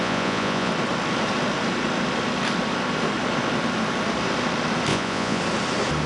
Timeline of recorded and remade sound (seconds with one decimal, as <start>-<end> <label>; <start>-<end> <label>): 0.0-0.7 remade; 0.7-4.9 recorded; 4.9-5.4 remade; 5.4-6.1 recorded